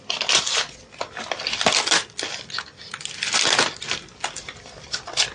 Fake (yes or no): no